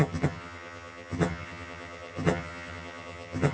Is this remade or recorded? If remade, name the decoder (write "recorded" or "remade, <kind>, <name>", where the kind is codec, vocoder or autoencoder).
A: remade, vocoder, HiFi-GAN